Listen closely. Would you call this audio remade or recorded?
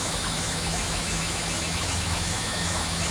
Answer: remade